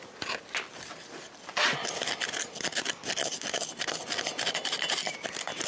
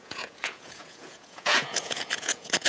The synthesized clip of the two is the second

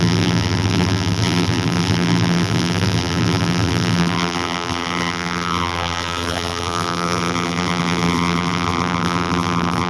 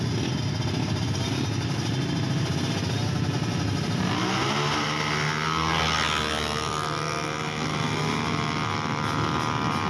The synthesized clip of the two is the first